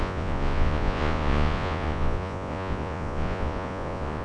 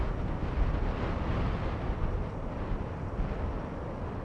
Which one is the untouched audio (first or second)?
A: second